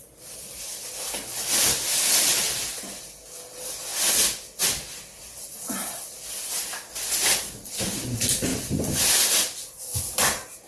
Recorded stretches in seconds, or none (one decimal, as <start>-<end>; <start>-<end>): 0.0-10.7